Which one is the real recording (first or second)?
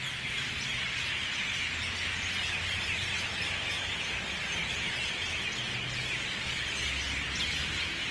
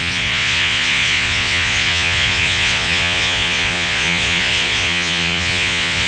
first